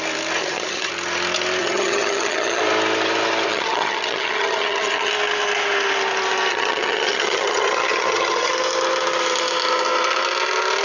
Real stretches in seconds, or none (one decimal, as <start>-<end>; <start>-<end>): 0.0-0.4; 0.9-1.6; 2.6-3.5; 5.1-6.5; 8.5-10.8